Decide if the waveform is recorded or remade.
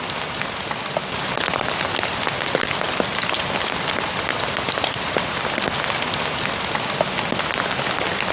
recorded